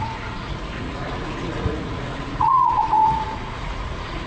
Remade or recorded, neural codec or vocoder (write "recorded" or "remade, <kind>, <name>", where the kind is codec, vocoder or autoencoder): remade, vocoder, Vocos